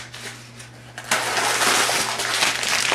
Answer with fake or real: real